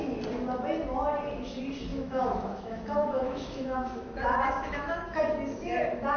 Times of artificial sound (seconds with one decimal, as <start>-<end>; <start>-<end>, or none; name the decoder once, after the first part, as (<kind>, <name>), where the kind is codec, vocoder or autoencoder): 1.9-5.2 (autoencoder, DAC-VAE)